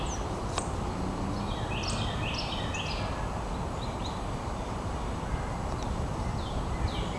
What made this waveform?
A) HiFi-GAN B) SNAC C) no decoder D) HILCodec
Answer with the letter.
C